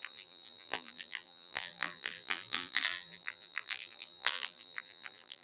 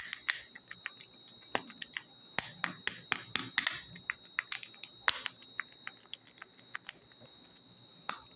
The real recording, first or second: second